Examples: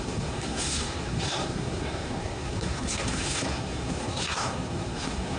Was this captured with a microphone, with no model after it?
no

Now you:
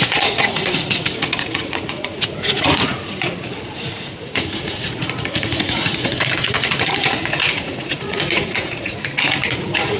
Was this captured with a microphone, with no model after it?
no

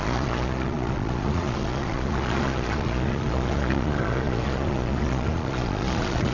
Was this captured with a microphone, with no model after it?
no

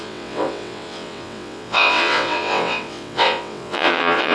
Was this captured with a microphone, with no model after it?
no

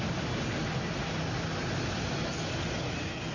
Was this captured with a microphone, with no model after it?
yes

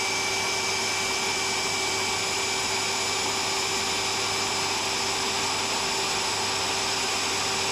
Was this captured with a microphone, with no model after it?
yes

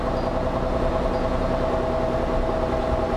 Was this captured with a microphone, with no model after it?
yes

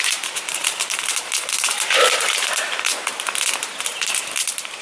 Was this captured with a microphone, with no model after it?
no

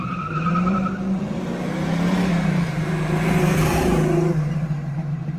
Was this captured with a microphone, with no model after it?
no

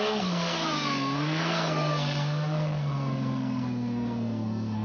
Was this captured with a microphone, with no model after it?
no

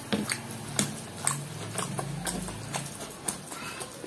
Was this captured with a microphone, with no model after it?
yes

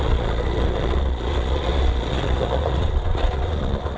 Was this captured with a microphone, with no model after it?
no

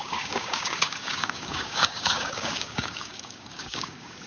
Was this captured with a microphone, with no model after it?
no